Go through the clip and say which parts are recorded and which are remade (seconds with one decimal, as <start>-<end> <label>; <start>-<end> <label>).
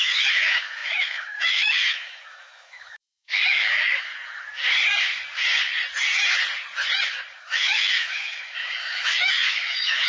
0.0-4.1 remade; 4.1-7.4 recorded; 7.4-10.1 remade